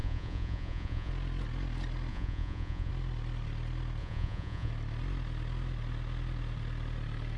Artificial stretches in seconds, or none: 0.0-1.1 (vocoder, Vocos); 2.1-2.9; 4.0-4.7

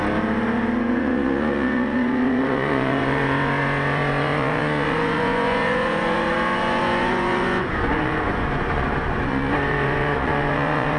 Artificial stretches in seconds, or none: 0.8-11.0 (vocoder, Vocos)

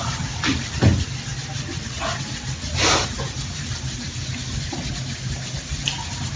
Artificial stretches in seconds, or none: none

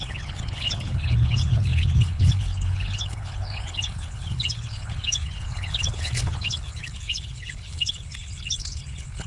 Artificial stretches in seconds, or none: 0.0-9.3 (codec, HILCodec)

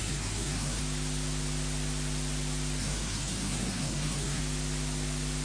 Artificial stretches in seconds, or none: 0.0-0.8 (codec, SNAC); 2.8-4.4

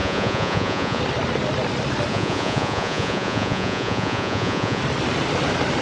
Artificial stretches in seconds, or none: 0.0-1.0 (vocoder, Vocos); 2.1-4.8